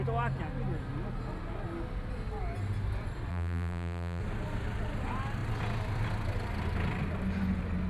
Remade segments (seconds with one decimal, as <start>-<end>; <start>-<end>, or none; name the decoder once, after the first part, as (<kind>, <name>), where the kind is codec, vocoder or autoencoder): 3.3-4.2 (vocoder, BigVGAN v2)